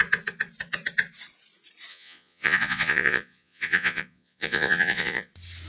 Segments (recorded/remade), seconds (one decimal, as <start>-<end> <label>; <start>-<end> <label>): 0.0-1.9 recorded; 1.9-5.3 remade; 5.3-5.7 recorded